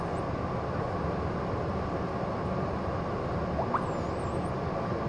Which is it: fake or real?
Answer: real